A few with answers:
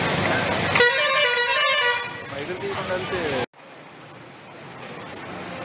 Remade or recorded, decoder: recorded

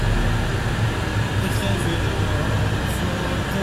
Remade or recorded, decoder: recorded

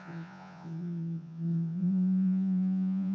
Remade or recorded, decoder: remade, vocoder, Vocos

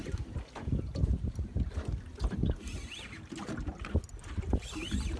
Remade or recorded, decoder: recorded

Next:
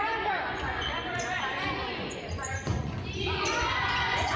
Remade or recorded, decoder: remade, vocoder, Vocos